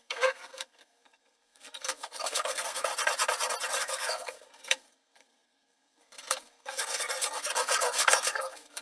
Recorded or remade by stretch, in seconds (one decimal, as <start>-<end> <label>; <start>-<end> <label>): 0.0-2.9 remade; 2.9-3.8 recorded; 3.8-8.8 remade